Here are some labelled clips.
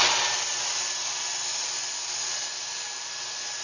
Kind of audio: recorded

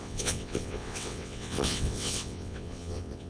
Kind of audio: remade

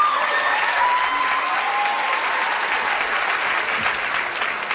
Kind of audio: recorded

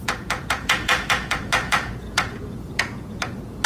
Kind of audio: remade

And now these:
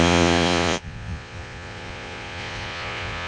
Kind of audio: remade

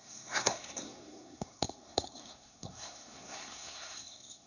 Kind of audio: remade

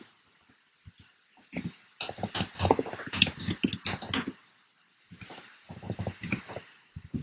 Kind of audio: recorded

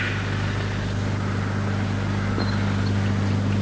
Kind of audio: recorded